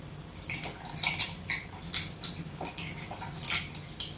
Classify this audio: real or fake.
real